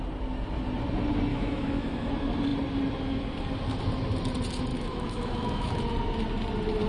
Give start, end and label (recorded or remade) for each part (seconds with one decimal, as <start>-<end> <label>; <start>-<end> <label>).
0.0-1.3 recorded; 1.3-2.1 remade; 2.1-4.7 recorded; 4.7-5.8 remade; 5.8-6.9 recorded